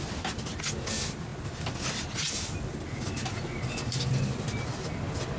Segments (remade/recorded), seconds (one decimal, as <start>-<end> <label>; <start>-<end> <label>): 0.0-5.4 recorded